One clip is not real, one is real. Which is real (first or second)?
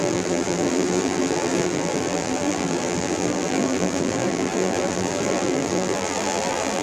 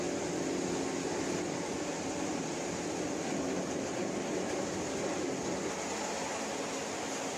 second